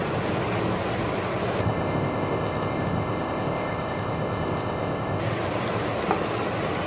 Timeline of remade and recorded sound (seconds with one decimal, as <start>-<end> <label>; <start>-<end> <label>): 0.0-1.6 recorded; 1.6-5.2 remade; 5.2-6.9 recorded